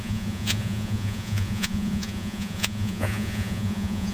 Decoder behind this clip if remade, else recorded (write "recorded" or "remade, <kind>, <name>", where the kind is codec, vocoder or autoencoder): remade, vocoder, Vocos